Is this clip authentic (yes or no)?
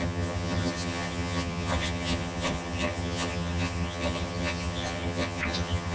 no